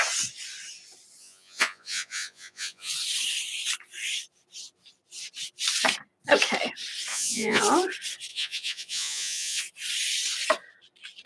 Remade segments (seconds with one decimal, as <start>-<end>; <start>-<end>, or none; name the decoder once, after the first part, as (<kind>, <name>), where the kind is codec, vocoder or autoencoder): 1.2-2.9 (vocoder, Vocos); 7.1-7.6; 8.3-9.6